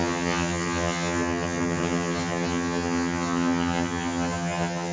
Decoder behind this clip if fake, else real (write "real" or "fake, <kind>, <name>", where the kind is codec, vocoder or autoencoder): fake, vocoder, HiFi-GAN